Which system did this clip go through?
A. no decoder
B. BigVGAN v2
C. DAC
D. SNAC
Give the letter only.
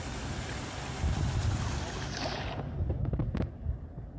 A